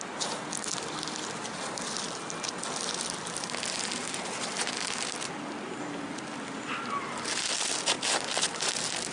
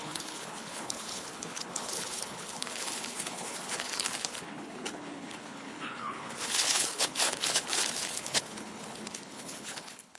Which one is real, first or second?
first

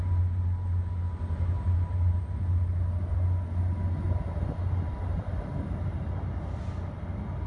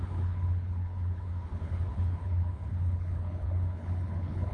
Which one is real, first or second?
first